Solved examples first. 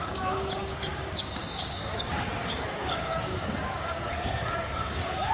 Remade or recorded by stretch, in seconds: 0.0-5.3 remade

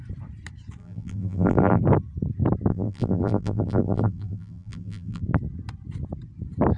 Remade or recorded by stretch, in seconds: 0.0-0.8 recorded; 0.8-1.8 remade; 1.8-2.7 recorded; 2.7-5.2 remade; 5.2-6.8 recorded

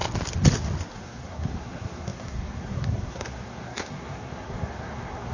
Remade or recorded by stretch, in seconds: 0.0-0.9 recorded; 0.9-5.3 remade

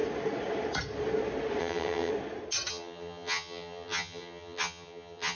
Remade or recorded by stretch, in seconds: 0.0-1.6 recorded; 1.6-2.1 remade; 2.1-2.7 recorded; 2.7-5.3 remade